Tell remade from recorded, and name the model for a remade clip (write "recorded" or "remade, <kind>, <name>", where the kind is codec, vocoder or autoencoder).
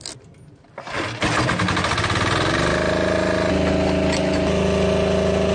recorded